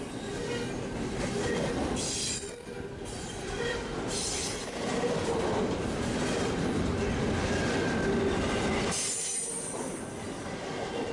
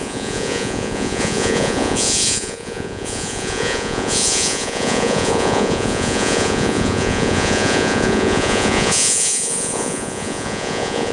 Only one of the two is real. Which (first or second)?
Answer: first